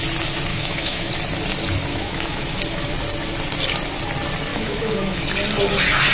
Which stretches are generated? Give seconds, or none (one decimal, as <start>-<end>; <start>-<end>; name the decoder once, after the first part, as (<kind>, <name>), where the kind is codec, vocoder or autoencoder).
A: 0.5-1.1 (autoencoder, DAC-VAE); 1.9-2.9; 4.5-5.2